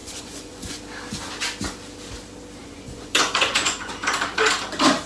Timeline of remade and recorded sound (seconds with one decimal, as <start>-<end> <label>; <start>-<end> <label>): 0.0-0.8 remade; 0.8-2.6 recorded; 2.6-3.9 remade; 3.9-5.1 recorded